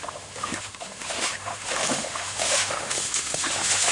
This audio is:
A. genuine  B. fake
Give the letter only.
B